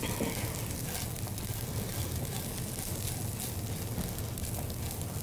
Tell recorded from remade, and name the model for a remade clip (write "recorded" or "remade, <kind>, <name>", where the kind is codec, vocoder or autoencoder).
recorded